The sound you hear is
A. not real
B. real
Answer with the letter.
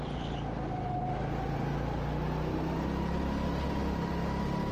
B